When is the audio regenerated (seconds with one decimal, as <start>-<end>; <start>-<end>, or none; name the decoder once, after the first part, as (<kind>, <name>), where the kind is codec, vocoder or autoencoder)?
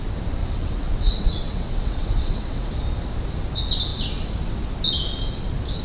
0.4-2.7 (vocoder, WaveNeXt)